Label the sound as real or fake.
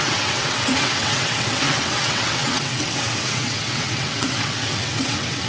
fake